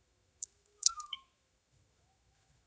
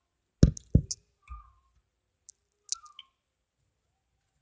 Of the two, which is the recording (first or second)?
second